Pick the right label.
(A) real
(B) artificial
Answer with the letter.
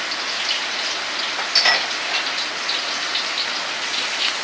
A